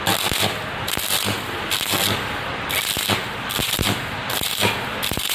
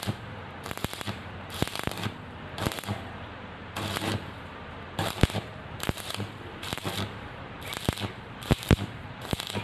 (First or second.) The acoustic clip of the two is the first